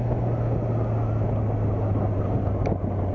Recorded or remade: recorded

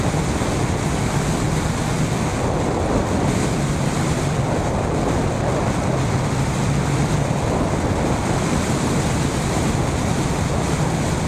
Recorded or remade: recorded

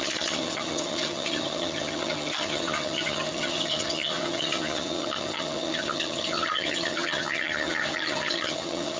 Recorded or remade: remade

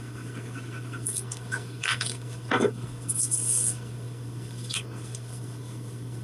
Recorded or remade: remade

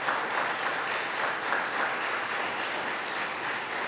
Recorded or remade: recorded